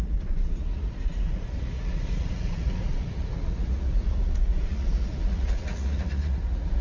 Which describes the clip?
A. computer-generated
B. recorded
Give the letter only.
A